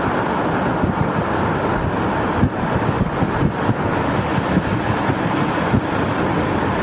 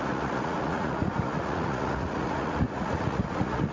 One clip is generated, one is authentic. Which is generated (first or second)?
second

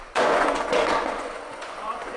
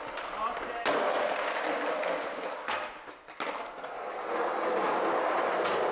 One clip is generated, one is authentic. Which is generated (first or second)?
first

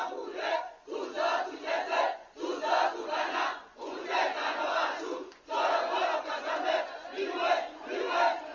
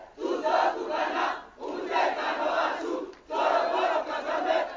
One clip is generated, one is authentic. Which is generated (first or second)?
first